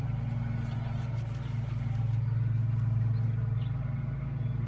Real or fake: real